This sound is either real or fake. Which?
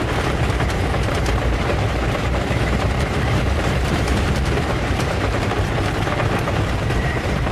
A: fake